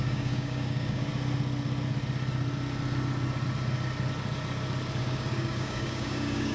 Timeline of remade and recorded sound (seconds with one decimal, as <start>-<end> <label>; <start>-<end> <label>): 0.0-1.1 remade; 1.1-5.0 recorded; 5.0-6.5 remade